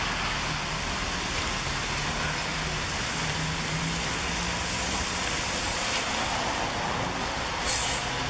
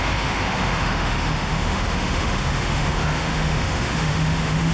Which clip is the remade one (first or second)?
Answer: second